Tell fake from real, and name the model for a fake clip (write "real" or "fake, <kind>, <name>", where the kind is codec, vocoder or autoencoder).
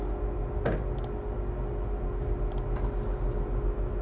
real